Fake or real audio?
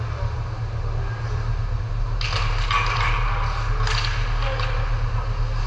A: real